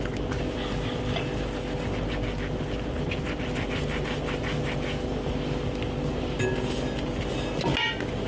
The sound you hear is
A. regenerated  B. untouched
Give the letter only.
B